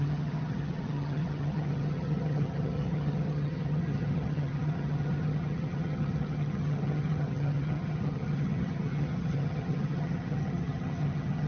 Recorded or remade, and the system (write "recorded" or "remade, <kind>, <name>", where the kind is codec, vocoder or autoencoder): remade, vocoder, HiFi-GAN